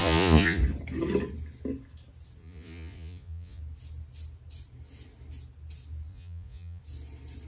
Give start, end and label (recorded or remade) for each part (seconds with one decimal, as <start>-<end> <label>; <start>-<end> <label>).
0.0-0.6 remade; 0.6-2.4 recorded; 2.4-3.6 remade; 3.6-6.1 recorded; 6.1-6.8 remade; 6.8-7.5 recorded